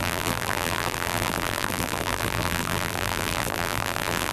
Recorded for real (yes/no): no